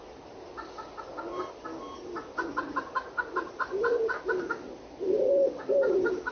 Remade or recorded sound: recorded